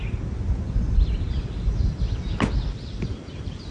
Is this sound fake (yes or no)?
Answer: no